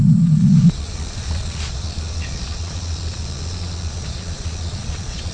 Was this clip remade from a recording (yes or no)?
yes